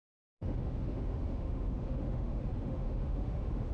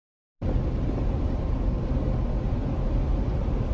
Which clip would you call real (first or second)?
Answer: second